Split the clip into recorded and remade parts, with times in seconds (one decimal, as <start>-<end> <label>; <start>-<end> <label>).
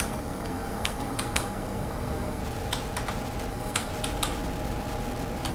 0.0-2.4 remade; 2.4-3.5 recorded; 3.5-3.9 remade; 3.9-5.5 recorded